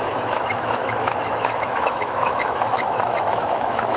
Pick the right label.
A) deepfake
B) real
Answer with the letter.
A